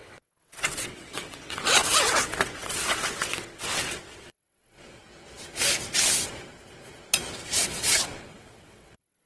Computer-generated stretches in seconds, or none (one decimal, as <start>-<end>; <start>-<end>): 0.0-5.0; 7.6-9.3